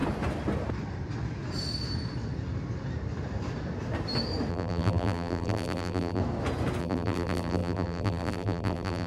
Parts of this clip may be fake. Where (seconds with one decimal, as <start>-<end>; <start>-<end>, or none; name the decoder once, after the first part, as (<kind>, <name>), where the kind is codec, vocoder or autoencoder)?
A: 4.5-6.2 (vocoder, BigVGAN v2); 6.8-9.1